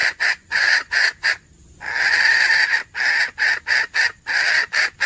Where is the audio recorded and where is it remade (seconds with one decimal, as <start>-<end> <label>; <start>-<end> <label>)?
0.0-1.5 remade; 1.5-5.1 recorded